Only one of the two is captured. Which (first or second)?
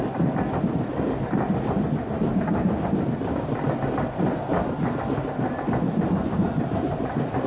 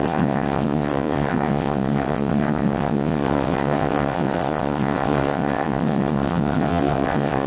first